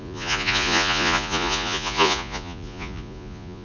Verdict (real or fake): fake